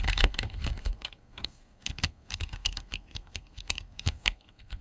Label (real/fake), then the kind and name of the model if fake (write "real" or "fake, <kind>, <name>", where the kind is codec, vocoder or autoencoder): fake, codec, SNAC